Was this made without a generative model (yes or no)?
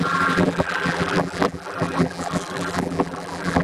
no